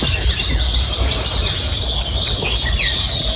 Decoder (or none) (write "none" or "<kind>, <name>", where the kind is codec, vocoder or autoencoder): none